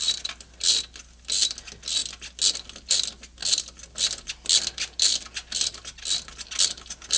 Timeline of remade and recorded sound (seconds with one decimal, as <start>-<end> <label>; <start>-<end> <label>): 0.0-7.2 recorded